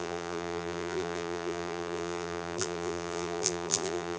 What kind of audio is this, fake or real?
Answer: fake